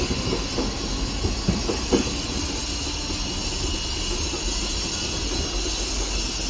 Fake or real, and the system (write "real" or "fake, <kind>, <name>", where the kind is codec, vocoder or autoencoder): real